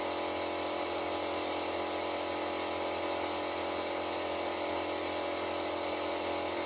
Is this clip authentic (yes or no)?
yes